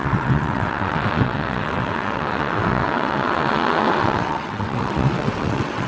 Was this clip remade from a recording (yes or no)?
yes